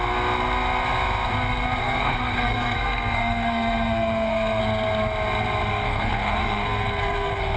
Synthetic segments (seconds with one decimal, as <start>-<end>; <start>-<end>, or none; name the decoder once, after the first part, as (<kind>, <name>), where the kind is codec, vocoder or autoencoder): 1.8-4.6 (codec, SNAC); 5.7-7.6